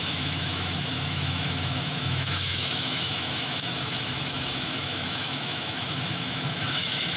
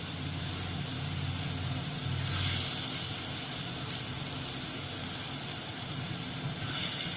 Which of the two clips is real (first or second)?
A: second